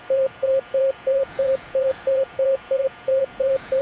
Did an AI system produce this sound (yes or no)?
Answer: yes